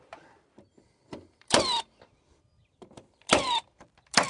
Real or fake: fake